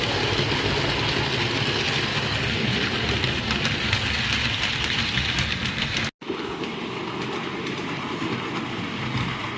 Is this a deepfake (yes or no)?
no